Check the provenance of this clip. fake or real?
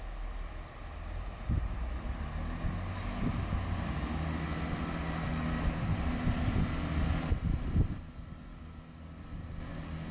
real